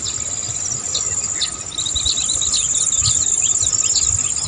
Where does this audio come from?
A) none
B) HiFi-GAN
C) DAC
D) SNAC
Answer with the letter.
A